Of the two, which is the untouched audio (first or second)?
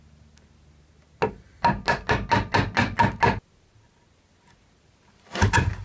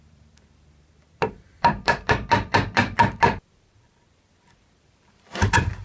first